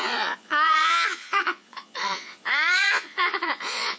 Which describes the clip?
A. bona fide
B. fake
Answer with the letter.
B